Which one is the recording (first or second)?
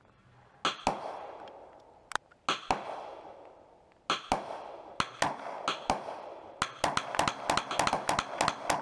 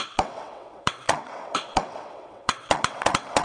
first